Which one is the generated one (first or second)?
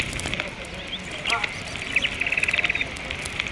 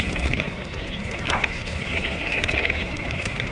second